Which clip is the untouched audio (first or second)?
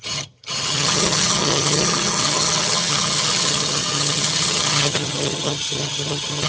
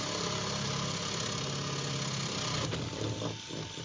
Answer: second